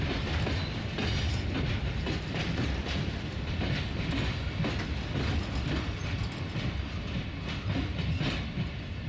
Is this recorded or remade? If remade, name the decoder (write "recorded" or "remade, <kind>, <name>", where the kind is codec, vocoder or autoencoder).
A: recorded